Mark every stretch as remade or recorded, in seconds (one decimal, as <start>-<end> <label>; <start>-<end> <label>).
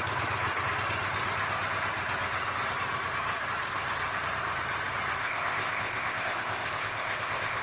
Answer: 0.0-5.2 recorded; 5.2-7.6 remade